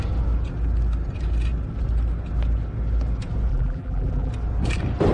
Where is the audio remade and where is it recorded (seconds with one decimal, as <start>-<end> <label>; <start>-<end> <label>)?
0.0-3.5 recorded; 3.5-4.3 remade; 4.3-5.1 recorded